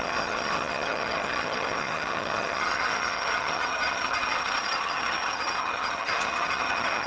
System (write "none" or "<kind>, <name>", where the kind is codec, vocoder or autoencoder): vocoder, HiFi-GAN